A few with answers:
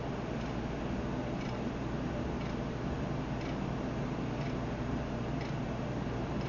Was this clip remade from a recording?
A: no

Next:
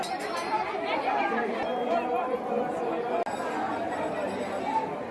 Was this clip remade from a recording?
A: no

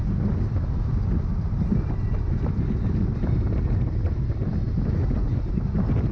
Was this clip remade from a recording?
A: no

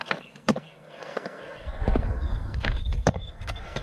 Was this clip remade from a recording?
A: yes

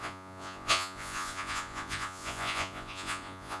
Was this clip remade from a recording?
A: yes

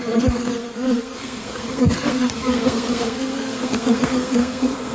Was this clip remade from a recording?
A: yes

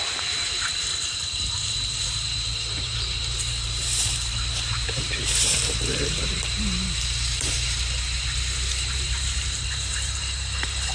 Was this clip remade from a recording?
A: yes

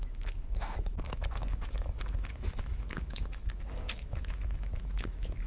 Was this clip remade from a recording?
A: yes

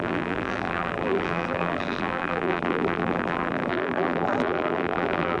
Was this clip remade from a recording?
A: yes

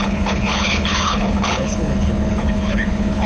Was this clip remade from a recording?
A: yes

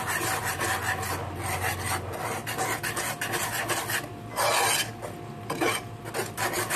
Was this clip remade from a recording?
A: no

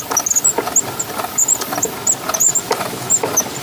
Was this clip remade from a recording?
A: no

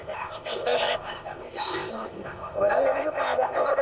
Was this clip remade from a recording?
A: yes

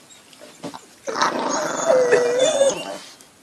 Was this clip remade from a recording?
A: no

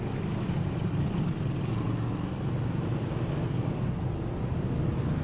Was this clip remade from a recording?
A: no